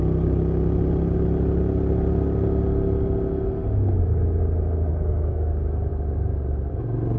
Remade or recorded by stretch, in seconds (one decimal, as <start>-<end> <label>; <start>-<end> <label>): 0.0-4.9 recorded; 4.9-5.5 remade; 5.5-7.2 recorded